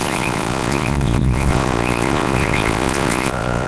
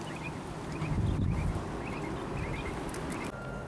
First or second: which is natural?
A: second